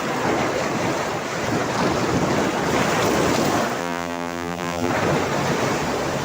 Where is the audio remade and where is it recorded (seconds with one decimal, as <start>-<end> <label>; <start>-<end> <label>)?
0.0-3.8 recorded; 3.8-4.9 remade; 4.9-6.2 recorded